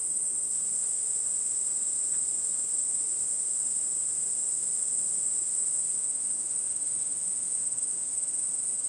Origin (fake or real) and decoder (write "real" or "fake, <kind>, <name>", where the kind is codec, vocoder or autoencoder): fake, autoencoder, DAC-VAE